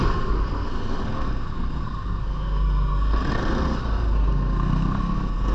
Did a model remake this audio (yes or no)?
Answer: yes